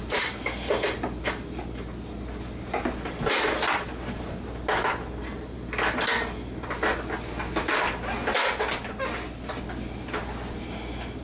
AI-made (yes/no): no